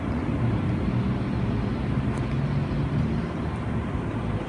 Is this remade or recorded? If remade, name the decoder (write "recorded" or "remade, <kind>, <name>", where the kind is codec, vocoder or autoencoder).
recorded